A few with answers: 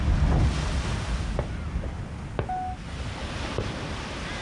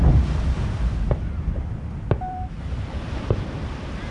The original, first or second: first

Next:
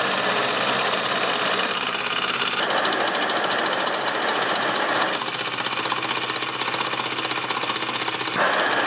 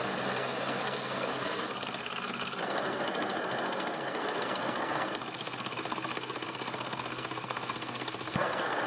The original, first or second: first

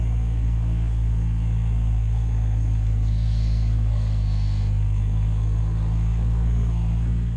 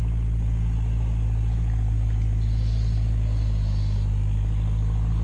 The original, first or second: second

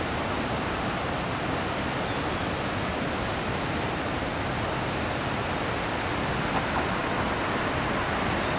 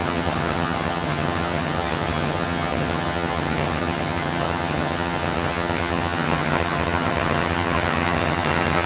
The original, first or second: first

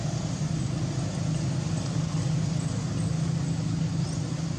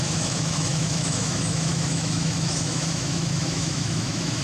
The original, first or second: first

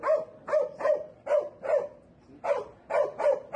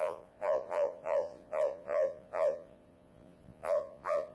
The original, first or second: first